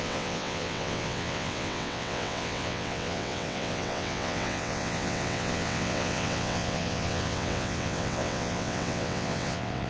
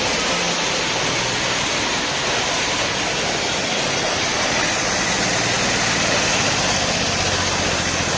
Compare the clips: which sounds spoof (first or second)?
first